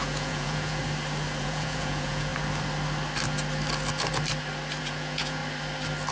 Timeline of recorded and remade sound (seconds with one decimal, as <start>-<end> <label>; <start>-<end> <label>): 0.0-0.8 remade; 0.8-1.4 recorded; 1.4-2.3 remade; 2.3-4.8 recorded; 4.8-5.4 remade; 5.4-6.1 recorded